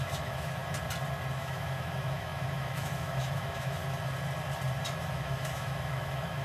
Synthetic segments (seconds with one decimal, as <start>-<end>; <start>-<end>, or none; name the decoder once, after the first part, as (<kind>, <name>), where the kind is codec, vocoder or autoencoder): 0.0-0.6 (autoencoder, DAC-VAE); 1.3-3.8; 5.0-6.4